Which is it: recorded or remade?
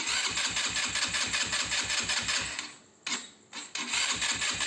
recorded